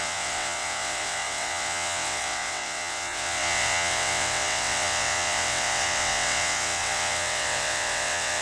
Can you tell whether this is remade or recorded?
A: remade